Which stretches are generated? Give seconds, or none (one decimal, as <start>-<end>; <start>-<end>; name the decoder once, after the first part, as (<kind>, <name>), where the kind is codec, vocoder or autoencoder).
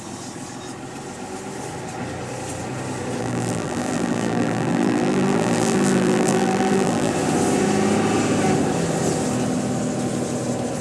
3.2-7.1 (vocoder, BigVGAN v2)